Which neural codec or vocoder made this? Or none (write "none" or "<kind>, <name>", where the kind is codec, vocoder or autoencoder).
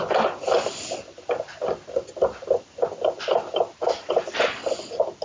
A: none